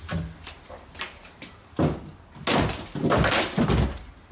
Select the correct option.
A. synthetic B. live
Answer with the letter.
B